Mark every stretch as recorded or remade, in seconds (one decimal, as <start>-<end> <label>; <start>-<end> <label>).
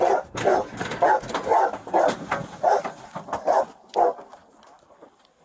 0.0-5.4 recorded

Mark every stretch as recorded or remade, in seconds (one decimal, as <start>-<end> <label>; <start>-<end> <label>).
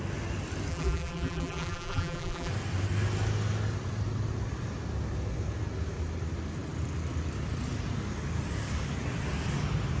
0.0-0.7 recorded; 0.7-2.5 remade; 2.5-10.0 recorded